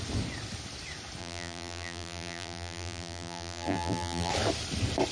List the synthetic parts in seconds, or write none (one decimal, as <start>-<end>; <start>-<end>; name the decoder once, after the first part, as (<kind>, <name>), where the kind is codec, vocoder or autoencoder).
1.2-4.3 (vocoder, BigVGAN v2)